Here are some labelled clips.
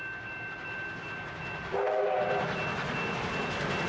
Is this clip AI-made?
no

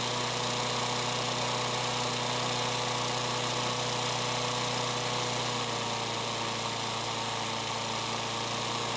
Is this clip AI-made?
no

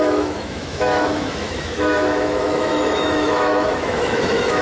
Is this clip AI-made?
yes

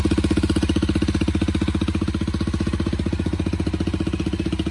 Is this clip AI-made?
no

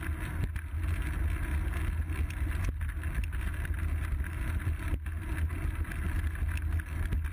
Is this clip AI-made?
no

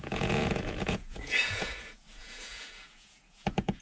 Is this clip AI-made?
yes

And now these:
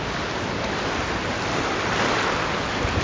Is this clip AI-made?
no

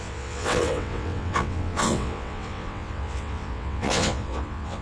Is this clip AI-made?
yes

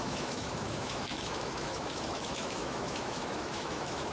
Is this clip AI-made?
yes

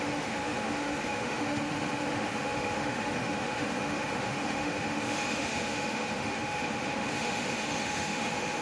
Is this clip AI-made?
yes